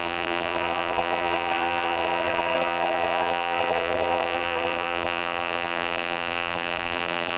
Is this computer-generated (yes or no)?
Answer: yes